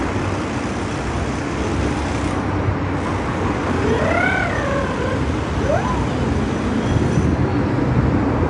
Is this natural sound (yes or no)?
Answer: yes